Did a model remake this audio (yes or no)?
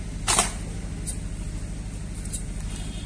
no